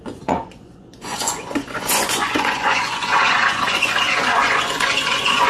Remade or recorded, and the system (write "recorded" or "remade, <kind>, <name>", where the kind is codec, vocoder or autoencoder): remade, vocoder, Vocos